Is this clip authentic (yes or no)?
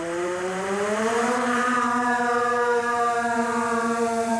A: no